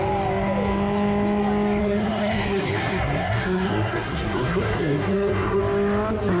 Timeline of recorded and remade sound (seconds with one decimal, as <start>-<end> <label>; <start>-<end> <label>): 0.0-1.8 recorded; 1.8-5.6 remade; 5.6-6.4 recorded